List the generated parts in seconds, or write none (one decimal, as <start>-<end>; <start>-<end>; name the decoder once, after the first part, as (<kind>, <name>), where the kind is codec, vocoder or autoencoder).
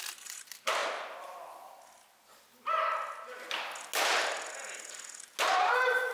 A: none